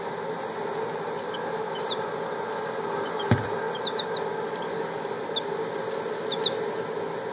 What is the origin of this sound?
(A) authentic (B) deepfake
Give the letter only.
A